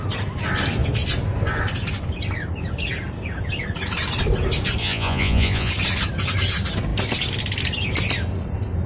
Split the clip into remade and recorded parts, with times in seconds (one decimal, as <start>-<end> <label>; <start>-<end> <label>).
0.0-4.8 recorded; 4.8-5.7 remade; 5.7-8.9 recorded